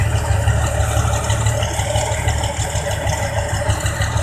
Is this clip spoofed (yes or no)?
no